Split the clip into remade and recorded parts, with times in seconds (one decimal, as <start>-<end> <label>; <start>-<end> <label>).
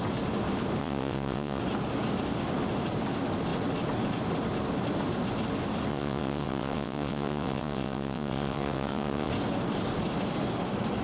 0.0-0.8 recorded; 0.8-1.6 remade; 1.6-5.9 recorded; 5.9-9.3 remade; 9.3-11.0 recorded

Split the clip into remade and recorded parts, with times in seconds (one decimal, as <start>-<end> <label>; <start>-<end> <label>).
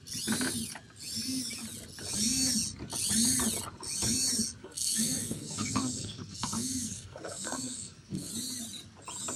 0.0-4.6 recorded; 4.6-8.3 remade; 8.3-9.4 recorded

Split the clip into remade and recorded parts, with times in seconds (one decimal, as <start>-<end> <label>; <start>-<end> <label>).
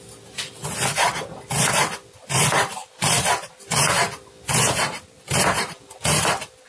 0.0-6.7 recorded